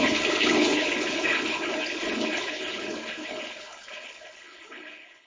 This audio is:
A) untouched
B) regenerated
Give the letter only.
B